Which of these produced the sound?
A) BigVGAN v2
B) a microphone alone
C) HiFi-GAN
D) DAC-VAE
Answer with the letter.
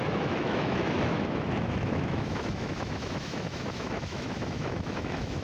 D